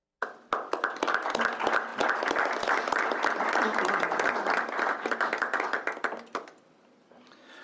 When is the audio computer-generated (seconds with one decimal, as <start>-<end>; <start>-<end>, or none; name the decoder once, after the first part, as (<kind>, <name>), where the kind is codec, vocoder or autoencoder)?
1.9-2.7 (vocoder, BigVGAN v2)